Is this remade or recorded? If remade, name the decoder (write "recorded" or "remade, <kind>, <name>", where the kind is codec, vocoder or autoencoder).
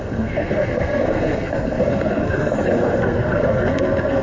remade, codec, SNAC